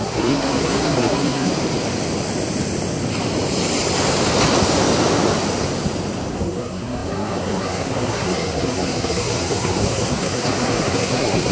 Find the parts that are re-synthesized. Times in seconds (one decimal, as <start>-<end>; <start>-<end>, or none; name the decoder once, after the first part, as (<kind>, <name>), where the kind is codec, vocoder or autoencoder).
0.0-1.5 (codec, SNAC); 6.3-11.5